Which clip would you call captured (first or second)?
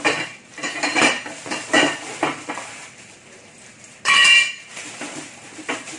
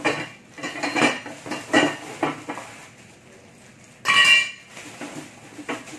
second